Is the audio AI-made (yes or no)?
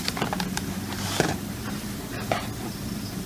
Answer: no